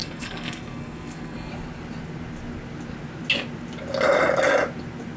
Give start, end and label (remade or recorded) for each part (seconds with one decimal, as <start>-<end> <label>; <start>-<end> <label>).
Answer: 0.0-1.5 remade; 1.5-5.2 recorded